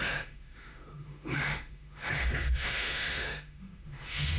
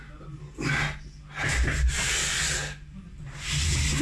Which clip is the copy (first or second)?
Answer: first